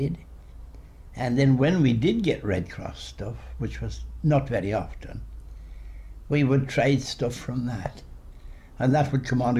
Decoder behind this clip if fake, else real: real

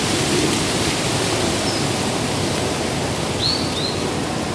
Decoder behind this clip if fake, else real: real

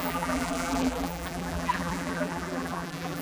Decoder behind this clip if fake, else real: fake, vocoder, BigVGAN v2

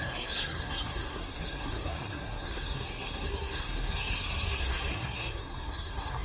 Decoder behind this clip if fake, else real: fake, codec, SNAC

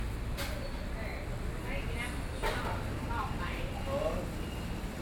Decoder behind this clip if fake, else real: real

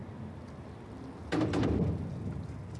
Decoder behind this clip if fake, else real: real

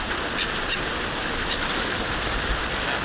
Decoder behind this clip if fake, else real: real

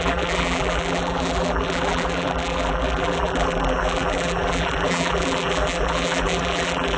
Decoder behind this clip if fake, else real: fake, vocoder, BigVGAN v2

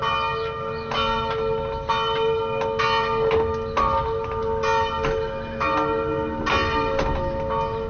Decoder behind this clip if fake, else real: real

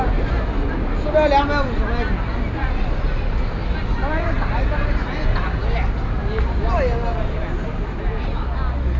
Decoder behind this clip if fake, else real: real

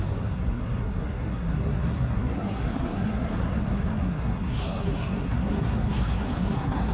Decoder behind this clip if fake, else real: fake, codec, SNAC